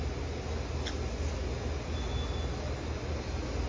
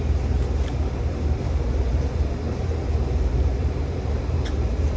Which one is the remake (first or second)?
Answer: second